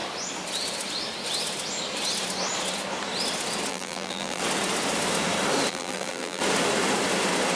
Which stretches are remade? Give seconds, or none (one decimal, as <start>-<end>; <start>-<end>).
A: 3.7-4.4; 5.7-6.4

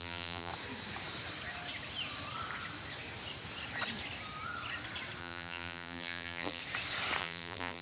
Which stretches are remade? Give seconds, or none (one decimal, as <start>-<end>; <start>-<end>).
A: 0.0-0.5; 5.2-6.6; 7.2-7.8

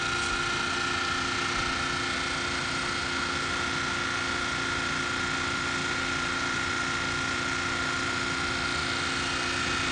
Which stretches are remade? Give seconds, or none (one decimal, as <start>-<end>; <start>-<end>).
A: 5.8-6.8

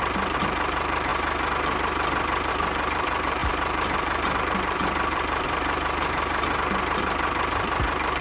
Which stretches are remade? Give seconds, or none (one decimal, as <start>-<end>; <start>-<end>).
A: 0.0-1.1; 2.5-8.2